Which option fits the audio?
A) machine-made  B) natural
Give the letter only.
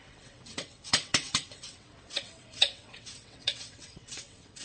A